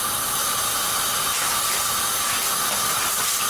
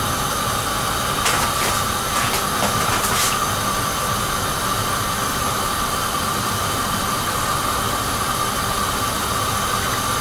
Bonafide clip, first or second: second